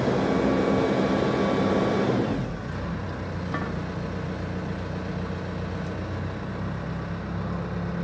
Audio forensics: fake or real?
real